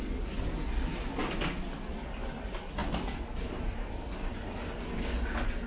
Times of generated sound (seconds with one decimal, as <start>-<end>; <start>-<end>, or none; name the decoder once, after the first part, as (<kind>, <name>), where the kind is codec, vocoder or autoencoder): none